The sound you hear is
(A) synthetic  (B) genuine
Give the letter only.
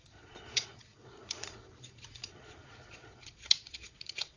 A